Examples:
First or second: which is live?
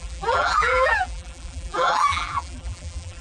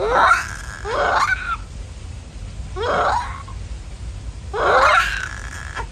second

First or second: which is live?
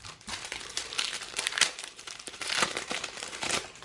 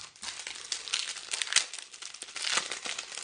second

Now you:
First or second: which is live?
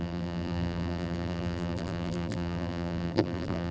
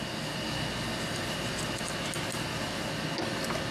second